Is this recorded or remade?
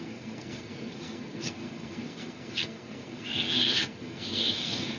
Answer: remade